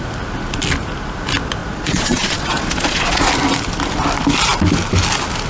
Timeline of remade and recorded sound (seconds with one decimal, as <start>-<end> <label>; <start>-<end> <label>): 0.0-1.6 recorded; 1.6-3.3 remade; 3.3-5.5 recorded